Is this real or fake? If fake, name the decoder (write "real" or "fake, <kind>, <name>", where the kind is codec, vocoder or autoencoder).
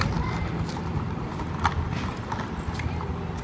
real